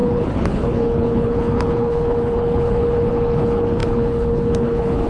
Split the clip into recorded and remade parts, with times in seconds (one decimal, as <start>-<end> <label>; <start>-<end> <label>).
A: 0.0-5.1 remade